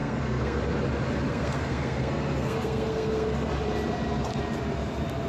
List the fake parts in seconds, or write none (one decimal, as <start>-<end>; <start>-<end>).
0.0-0.6; 1.3-3.5